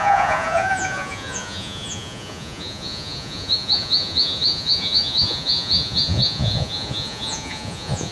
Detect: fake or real fake